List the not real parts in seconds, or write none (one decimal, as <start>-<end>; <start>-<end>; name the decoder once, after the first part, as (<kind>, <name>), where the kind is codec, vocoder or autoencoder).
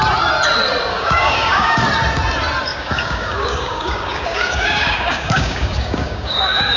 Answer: 0.9-1.8 (codec, DAC); 2.7-6.8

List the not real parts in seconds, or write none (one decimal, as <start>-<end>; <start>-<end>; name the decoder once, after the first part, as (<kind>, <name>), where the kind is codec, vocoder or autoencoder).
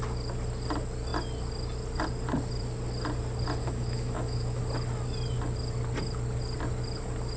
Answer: 3.6-4.6 (autoencoder, DAC-VAE)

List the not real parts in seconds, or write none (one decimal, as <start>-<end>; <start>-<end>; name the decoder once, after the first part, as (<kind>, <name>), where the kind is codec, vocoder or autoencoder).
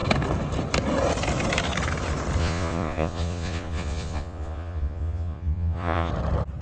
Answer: 2.4-6.1 (vocoder, Vocos)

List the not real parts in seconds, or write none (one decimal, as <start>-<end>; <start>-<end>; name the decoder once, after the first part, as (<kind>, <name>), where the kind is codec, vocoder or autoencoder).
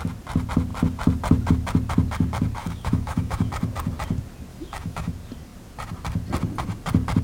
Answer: 2.6-3.5 (autoencoder, DAC-VAE); 4.5-5.1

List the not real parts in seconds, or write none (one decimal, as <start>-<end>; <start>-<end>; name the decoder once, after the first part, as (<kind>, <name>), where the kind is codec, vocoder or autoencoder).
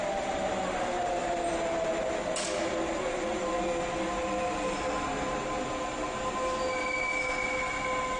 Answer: none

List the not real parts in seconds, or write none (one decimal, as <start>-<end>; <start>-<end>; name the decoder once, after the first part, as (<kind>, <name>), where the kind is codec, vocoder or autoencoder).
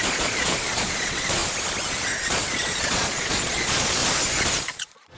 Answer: 0.0-1.4 (vocoder, Vocos); 2.2-4.0; 4.8-5.2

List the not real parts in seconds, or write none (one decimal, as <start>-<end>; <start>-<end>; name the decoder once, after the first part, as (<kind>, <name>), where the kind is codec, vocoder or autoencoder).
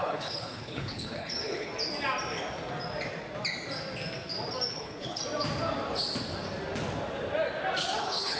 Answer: 0.0-1.7 (codec, HILCodec); 4.7-5.2; 8.0-8.4